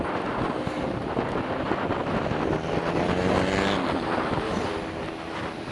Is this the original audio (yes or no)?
yes